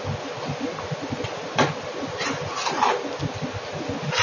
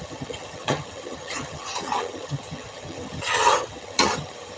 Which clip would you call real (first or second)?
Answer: first